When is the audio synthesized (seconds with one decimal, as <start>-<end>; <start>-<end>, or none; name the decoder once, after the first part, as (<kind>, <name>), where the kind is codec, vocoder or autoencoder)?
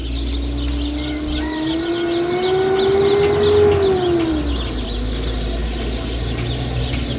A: none